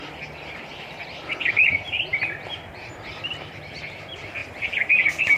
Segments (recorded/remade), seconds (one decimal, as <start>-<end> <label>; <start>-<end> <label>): 0.0-2.1 remade; 2.1-3.5 recorded; 3.5-4.4 remade; 4.4-5.4 recorded